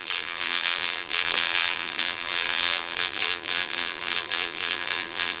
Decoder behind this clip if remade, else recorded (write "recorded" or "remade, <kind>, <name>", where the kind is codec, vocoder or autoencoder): remade, vocoder, BigVGAN v2